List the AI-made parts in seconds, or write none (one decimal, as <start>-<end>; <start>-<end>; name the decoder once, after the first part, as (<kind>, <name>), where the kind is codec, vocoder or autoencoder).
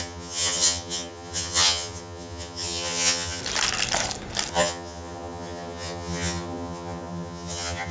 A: 0.0-3.4 (vocoder, HiFi-GAN); 4.5-7.9